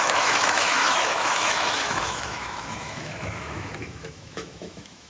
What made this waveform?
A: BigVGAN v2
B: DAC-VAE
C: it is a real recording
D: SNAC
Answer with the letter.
B